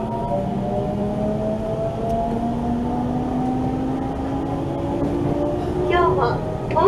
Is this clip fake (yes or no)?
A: no